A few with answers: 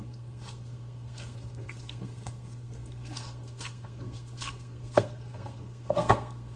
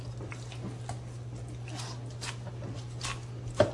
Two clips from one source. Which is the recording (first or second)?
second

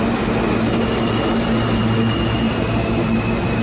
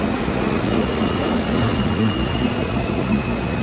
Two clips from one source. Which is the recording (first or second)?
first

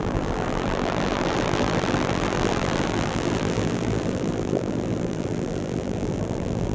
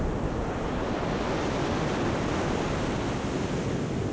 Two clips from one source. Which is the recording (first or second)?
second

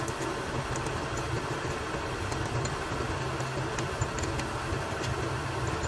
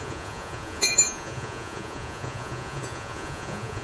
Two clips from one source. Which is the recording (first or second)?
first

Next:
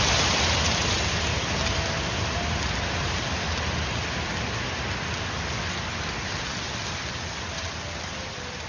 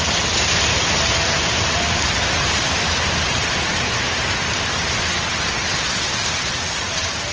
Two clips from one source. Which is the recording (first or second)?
first